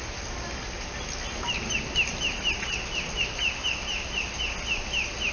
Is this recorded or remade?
recorded